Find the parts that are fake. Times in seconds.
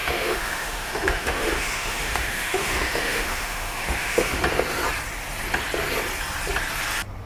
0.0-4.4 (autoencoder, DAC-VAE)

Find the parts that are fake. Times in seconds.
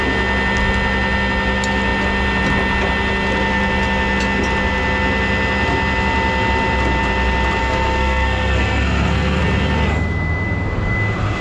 7.6-9.4 (codec, SNAC)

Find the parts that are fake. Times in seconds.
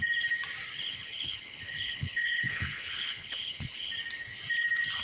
0.9-3.9 (codec, HILCodec)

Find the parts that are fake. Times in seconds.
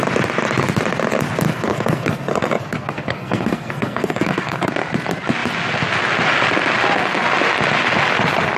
1.5-4.7 (codec, SNAC)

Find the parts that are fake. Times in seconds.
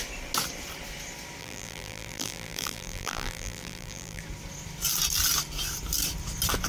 1.4-4.2 (vocoder, BigVGAN v2)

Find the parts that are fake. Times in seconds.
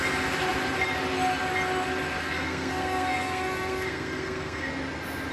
2.2-4.7 (codec, SNAC)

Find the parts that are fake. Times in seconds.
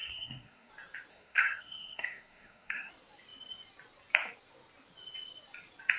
0.0-0.7 (codec, SNAC); 1.1-2.9